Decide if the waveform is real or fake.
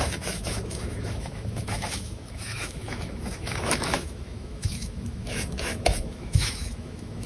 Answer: fake